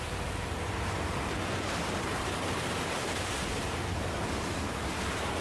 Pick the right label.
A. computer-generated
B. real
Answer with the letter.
A